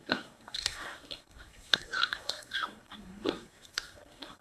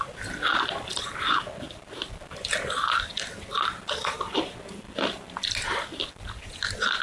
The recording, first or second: second